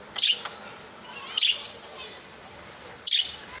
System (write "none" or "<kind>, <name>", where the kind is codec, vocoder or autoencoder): none